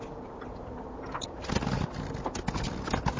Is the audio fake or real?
real